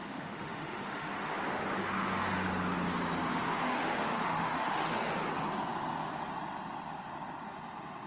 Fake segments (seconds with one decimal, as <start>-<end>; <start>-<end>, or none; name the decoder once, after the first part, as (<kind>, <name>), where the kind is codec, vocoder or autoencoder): 0.0-1.4 (autoencoder, DAC-VAE); 3.5-5.1